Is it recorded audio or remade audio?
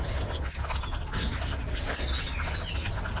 recorded